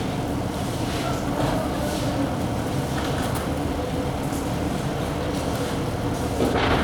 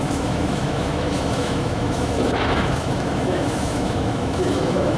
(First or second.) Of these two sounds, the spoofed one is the second